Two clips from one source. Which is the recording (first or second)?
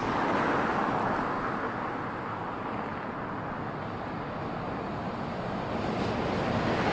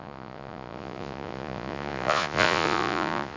first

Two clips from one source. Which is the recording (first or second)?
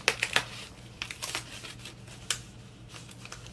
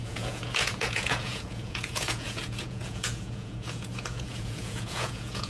first